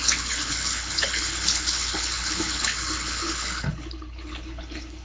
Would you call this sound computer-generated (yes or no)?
yes